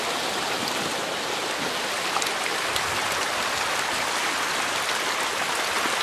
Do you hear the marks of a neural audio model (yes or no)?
no